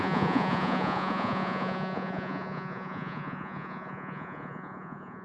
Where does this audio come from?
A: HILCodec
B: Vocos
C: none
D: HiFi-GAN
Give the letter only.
B